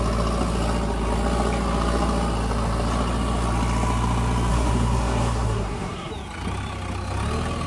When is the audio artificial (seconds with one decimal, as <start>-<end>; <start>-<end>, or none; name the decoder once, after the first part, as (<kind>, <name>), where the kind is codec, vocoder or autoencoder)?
4.5-6.1 (codec, SNAC)